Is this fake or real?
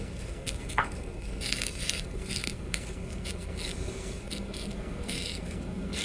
fake